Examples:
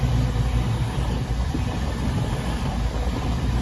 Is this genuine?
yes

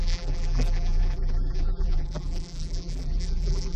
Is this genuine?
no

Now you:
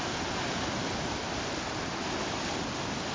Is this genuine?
yes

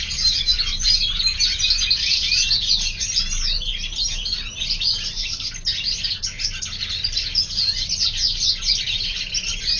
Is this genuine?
yes